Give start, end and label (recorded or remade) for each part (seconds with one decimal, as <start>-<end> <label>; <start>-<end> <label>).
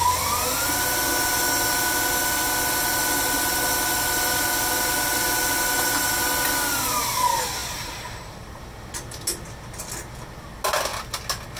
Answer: 0.0-7.6 recorded; 7.6-8.6 remade; 8.6-11.6 recorded